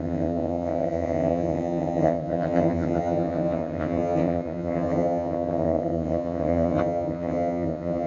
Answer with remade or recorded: remade